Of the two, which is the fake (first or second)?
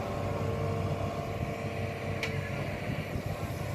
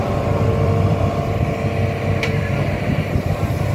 second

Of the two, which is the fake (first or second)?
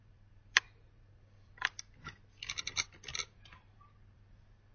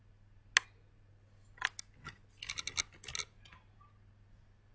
first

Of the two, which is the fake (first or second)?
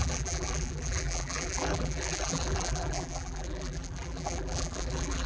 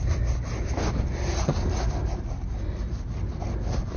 first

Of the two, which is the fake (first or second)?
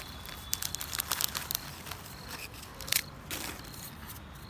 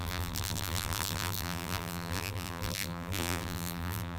second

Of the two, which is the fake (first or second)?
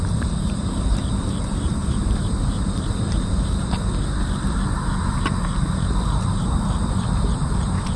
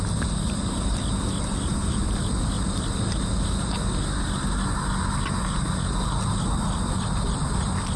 first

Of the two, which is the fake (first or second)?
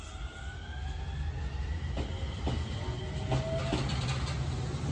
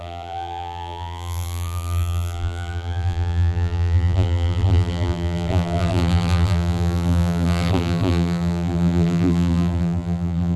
second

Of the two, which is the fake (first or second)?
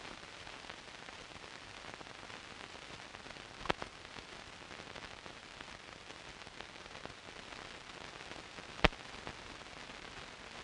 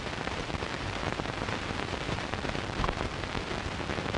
second